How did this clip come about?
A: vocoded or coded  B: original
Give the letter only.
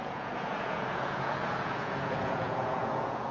A